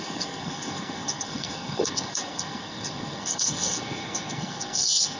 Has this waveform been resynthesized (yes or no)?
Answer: yes